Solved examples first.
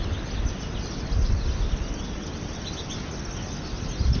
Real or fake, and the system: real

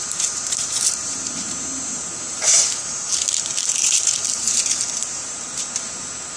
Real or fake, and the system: fake, vocoder, BigVGAN v2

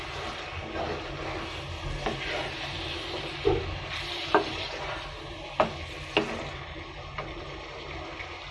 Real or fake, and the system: real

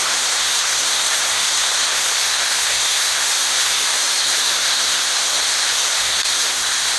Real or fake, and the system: fake, codec, SNAC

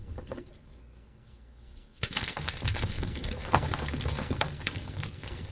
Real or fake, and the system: fake, codec, SNAC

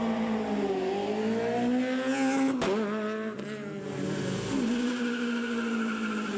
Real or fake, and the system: real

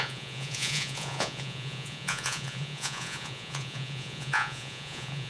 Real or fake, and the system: fake, vocoder, Vocos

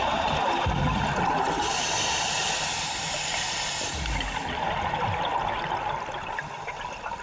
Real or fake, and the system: real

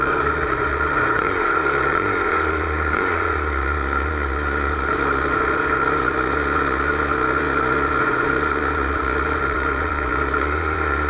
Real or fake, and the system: fake, vocoder, Vocos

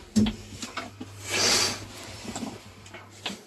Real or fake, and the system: real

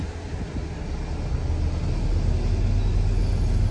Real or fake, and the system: real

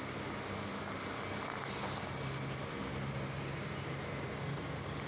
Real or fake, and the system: real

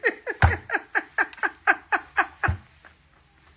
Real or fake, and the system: real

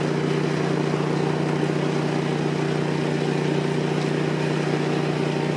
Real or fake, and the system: real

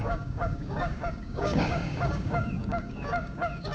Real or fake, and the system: fake, codec, DAC